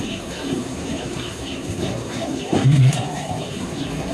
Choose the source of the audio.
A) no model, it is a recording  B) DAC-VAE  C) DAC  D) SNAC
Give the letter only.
D